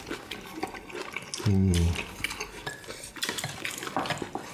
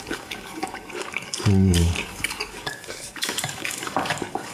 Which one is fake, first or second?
second